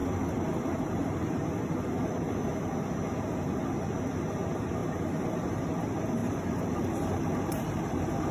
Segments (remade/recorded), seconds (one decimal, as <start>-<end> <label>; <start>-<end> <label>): 0.0-6.2 recorded; 6.2-8.3 remade